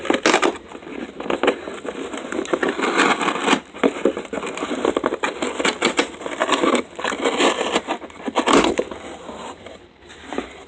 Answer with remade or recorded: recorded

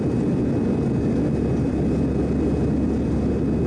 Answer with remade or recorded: recorded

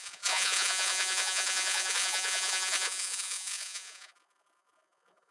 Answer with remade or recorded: remade